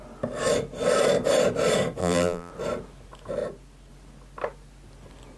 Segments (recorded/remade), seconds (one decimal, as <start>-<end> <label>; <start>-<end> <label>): 0.0-2.0 recorded; 2.0-2.5 remade; 2.5-5.4 recorded